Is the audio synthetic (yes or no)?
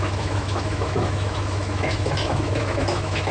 yes